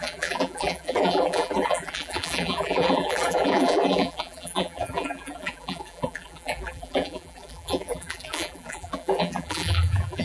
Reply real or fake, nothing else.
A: fake